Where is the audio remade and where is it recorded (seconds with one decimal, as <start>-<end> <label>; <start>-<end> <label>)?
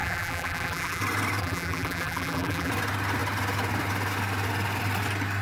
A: 0.0-1.0 remade; 1.0-1.4 recorded; 1.4-2.7 remade; 2.7-5.4 recorded